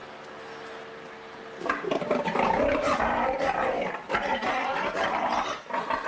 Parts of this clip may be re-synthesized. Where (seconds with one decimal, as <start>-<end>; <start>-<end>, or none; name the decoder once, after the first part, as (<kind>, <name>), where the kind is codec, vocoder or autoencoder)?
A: 2.0-6.1 (vocoder, BigVGAN v2)